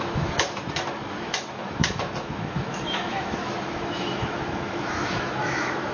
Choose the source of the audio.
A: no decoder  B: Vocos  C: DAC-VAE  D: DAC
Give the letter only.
C